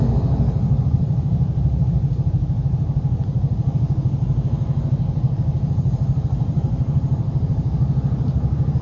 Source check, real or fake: real